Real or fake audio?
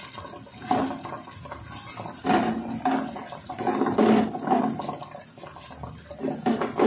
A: real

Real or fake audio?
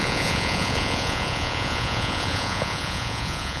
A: fake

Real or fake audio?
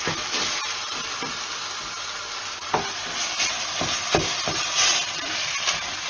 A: real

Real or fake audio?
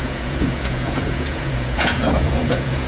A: fake